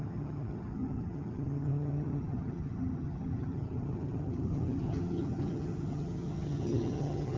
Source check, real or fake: fake